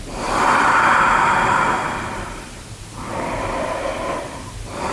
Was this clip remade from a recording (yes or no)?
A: yes